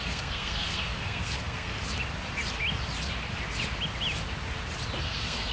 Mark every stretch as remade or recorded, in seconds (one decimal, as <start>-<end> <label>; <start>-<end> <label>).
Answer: 0.0-1.7 remade; 1.7-5.0 recorded; 5.0-5.5 remade